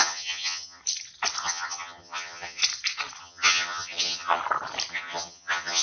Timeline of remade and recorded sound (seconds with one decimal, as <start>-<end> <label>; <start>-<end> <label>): 0.0-0.8 remade; 0.8-1.4 recorded; 1.4-2.6 remade; 2.6-3.2 recorded; 3.2-4.4 remade; 4.4-4.9 recorded; 4.9-5.8 remade